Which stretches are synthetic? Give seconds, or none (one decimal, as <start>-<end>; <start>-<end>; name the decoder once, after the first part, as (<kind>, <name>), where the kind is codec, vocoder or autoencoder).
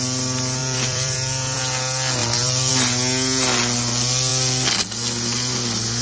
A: 0.6-1.6 (vocoder, BigVGAN v2); 2.2-2.7